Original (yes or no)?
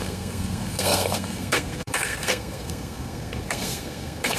no